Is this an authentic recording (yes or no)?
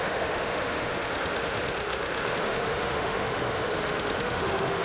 no